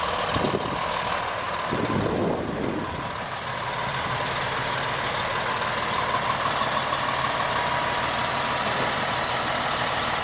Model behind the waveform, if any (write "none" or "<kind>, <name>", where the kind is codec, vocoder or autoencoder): none